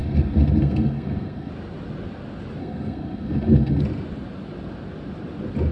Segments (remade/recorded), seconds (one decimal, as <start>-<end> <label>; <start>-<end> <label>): 0.0-1.5 remade; 1.5-2.6 recorded; 2.6-3.8 remade; 3.8-5.7 recorded